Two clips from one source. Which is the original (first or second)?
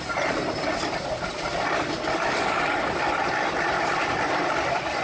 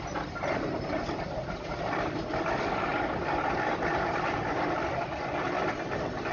second